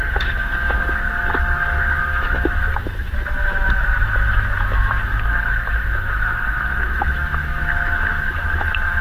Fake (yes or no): yes